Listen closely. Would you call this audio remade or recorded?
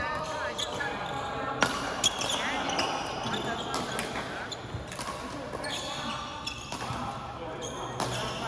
recorded